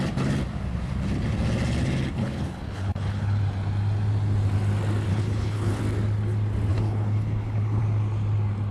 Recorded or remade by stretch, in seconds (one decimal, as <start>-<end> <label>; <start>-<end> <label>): 0.0-2.2 recorded; 2.2-3.4 remade; 3.4-5.1 recorded; 5.1-5.8 remade; 5.8-6.7 recorded; 6.7-7.8 remade; 7.8-8.7 recorded